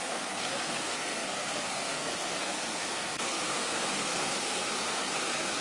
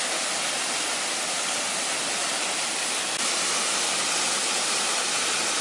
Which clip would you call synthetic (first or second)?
first